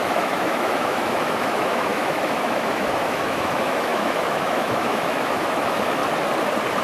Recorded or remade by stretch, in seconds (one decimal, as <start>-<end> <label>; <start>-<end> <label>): 0.0-6.0 remade; 6.0-6.8 recorded